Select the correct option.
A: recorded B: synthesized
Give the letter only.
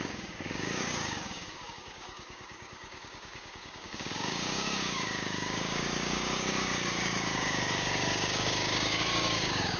B